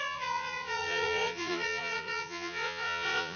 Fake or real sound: fake